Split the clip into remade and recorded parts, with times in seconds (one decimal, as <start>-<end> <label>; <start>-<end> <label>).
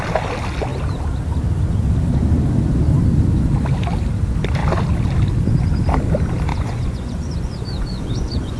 0.0-6.5 recorded; 6.5-8.6 remade